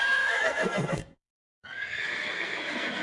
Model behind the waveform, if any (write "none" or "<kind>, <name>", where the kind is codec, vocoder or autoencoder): codec, SNAC